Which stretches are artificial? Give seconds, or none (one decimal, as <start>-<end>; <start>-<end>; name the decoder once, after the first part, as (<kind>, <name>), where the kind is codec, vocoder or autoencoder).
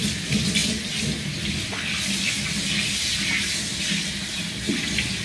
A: none